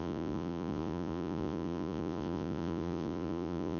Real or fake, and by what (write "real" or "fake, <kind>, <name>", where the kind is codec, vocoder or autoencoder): fake, vocoder, Vocos